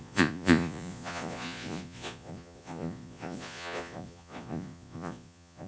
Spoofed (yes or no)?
yes